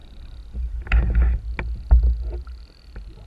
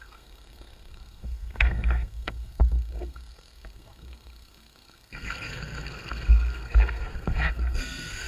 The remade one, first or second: second